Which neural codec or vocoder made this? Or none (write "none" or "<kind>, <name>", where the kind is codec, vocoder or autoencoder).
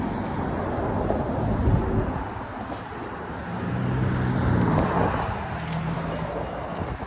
none